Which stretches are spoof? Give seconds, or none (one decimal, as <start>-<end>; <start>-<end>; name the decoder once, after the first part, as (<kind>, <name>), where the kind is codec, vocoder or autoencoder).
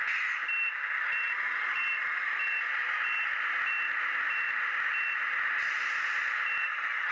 none